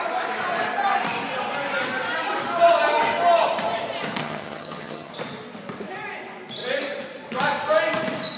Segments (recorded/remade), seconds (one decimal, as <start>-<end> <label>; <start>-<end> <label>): 0.0-4.2 recorded; 4.2-5.1 remade; 5.1-8.4 recorded